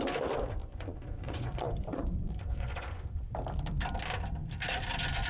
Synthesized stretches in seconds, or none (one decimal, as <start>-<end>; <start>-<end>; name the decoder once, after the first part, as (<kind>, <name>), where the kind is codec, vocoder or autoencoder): 0.6-3.3 (vocoder, Vocos)